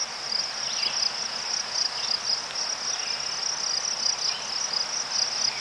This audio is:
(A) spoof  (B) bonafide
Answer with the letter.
B